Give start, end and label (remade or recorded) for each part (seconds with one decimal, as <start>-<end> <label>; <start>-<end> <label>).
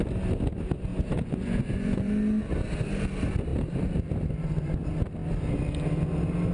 0.0-0.9 recorded; 0.9-2.1 remade; 2.1-6.5 recorded